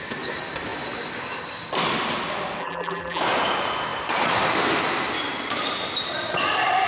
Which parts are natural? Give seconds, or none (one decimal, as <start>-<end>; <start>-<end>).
0.0-2.6; 3.2-6.9